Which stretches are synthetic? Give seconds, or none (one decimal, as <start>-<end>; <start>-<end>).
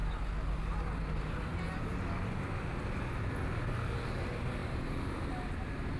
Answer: 4.6-5.3